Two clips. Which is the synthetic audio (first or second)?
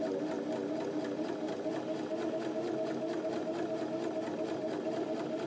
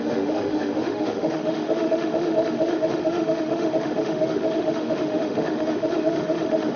second